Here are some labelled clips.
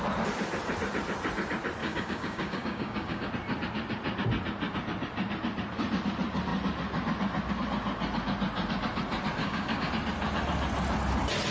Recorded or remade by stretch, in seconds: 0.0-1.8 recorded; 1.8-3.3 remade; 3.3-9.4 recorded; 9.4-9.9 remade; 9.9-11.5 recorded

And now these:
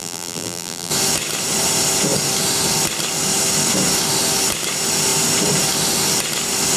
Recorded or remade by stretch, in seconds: 0.0-0.9 remade; 0.9-6.8 recorded

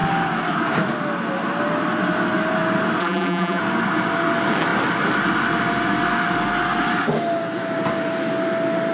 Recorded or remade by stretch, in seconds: 0.0-3.0 recorded; 3.0-3.6 remade; 3.6-8.9 recorded

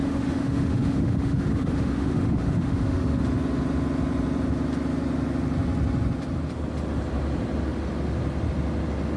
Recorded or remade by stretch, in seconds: 0.0-3.2 remade; 3.2-9.2 recorded

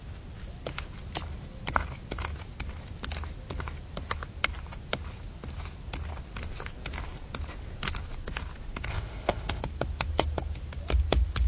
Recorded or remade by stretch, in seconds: 0.0-8.9 recorded; 8.9-9.6 remade; 9.6-11.5 recorded

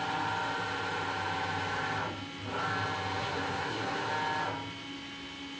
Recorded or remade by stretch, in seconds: 0.0-3.2 recorded; 3.2-4.1 remade; 4.1-5.6 recorded

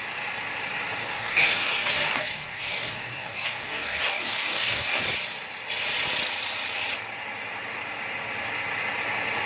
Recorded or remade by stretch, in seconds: 0.0-1.0 recorded; 1.0-5.0 remade; 5.0-9.5 recorded